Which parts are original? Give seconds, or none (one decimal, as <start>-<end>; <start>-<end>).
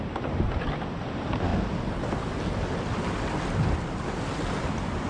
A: 0.0-5.1